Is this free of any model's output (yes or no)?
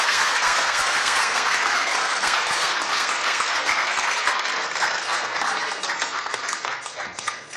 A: no